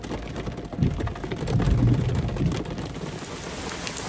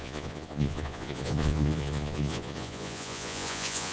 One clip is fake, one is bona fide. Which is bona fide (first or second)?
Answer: first